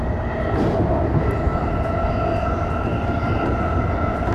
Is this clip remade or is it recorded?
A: recorded